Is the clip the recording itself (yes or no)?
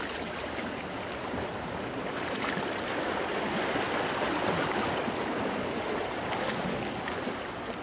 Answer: yes